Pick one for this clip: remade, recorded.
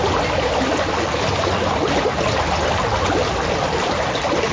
recorded